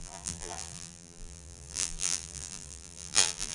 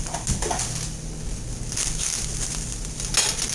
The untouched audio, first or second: second